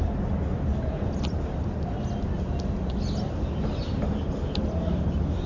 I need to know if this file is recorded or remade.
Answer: recorded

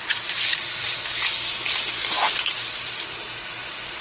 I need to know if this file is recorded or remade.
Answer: recorded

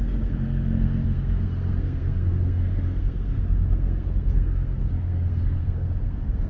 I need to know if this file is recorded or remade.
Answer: remade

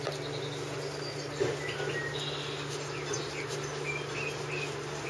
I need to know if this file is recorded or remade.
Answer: recorded